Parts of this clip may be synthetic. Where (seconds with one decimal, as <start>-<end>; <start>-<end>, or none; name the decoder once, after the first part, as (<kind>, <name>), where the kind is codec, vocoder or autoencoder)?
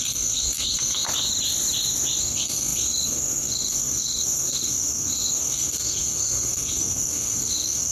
0.0-1.1 (codec, SNAC); 2.2-7.9